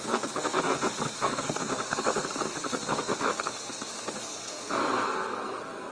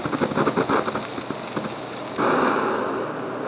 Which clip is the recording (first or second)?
second